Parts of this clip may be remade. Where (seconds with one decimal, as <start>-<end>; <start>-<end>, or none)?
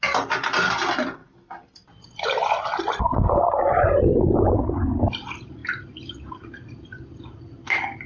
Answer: none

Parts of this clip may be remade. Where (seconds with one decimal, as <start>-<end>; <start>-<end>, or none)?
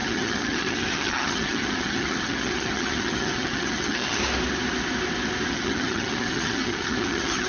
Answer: 0.0-4.2; 5.5-7.5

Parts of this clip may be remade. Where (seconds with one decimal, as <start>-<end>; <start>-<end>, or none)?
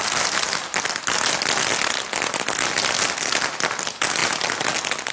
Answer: none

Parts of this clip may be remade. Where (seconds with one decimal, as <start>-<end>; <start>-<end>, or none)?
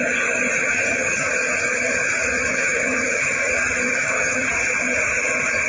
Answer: 0.6-1.3; 2.5-3.5; 4.0-4.5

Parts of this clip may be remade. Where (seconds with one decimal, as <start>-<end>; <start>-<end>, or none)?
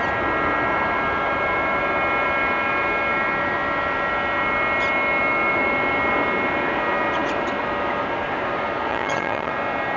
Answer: 8.9-9.5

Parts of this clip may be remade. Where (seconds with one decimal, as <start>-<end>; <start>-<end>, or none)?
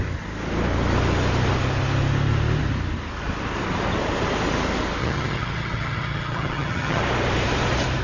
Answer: 5.0-7.0